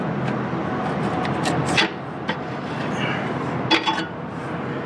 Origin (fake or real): real